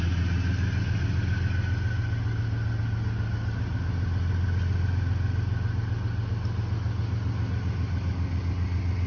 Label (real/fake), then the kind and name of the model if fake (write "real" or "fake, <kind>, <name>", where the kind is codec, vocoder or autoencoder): real